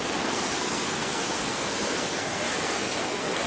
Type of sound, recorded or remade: remade